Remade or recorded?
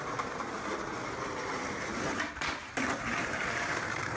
remade